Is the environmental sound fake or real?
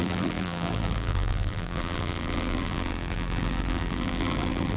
fake